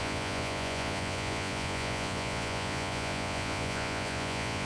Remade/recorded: remade